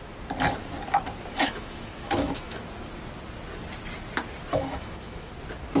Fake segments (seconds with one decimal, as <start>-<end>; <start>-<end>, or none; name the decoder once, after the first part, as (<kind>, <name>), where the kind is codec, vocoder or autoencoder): 1.3-2.6 (autoencoder, DAC-VAE); 4.5-5.3